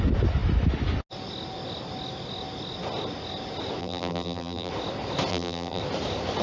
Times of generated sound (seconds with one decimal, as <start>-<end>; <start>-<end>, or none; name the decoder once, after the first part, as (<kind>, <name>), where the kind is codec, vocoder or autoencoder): 3.8-4.7 (vocoder, BigVGAN v2); 5.3-5.8